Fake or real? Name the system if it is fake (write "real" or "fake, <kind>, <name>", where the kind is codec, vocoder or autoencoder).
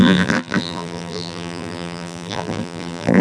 fake, vocoder, BigVGAN v2